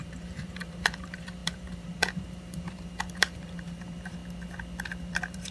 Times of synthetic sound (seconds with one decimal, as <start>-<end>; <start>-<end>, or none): 0.0-4.2; 5.0-5.5